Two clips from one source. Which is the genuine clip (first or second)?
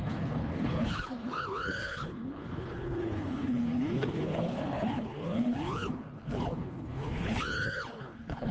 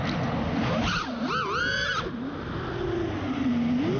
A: second